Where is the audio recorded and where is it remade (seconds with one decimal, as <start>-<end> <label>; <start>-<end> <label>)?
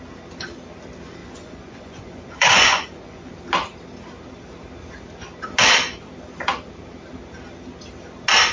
0.0-1.2 recorded; 1.2-3.3 remade; 3.3-8.5 recorded